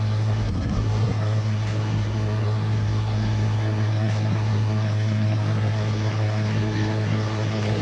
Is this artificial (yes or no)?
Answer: yes